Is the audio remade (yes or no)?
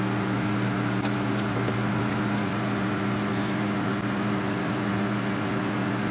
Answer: no